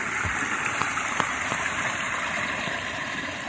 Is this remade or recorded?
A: remade